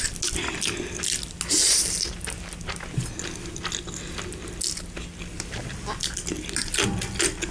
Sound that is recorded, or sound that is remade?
recorded